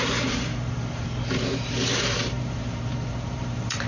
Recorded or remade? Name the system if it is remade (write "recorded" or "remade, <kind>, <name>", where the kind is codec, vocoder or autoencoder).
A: remade, vocoder, BigVGAN v2